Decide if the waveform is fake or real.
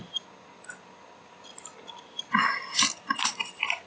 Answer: real